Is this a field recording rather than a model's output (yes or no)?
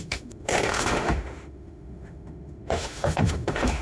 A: no